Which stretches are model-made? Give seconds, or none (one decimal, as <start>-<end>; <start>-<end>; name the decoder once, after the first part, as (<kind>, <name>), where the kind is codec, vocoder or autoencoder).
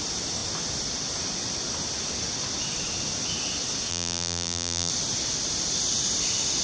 3.9-4.9 (vocoder, BigVGAN v2)